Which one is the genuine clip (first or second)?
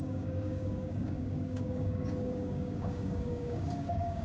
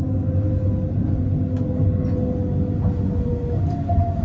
second